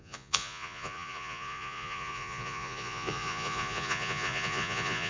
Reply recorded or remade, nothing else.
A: remade